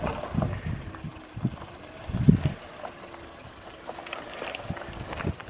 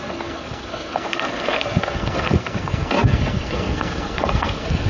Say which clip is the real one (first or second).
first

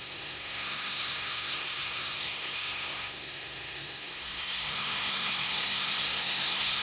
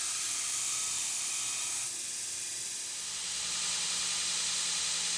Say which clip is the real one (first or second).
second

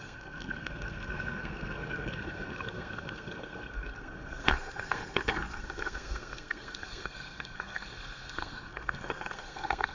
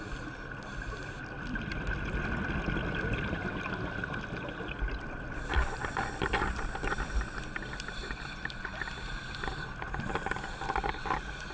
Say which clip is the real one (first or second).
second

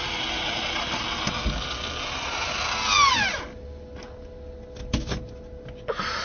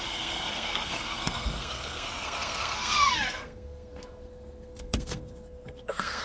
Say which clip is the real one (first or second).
first